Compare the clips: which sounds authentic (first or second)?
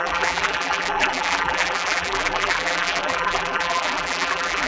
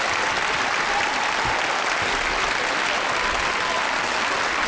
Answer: second